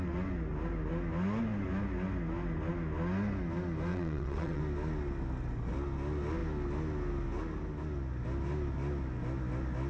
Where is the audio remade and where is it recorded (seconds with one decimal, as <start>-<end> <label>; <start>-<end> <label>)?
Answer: 0.0-3.9 recorded; 3.9-4.6 remade; 4.6-9.9 recorded